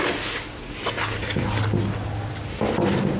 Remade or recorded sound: recorded